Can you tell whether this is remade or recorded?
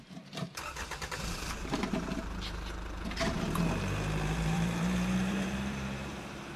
remade